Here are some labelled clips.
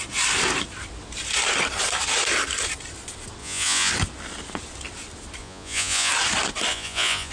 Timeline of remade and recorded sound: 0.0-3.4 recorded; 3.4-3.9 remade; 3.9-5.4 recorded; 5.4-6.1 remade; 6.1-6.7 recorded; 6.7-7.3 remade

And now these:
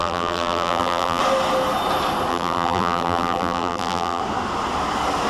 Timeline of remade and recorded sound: 0.0-1.2 remade; 1.2-2.3 recorded; 2.3-4.2 remade; 4.2-5.3 recorded

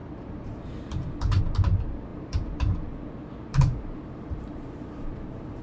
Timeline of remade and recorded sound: 0.0-1.4 remade; 1.4-2.1 recorded; 2.1-5.6 remade

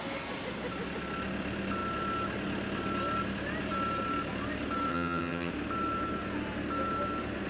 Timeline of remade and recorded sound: 0.0-4.9 recorded; 4.9-5.5 remade; 5.5-7.5 recorded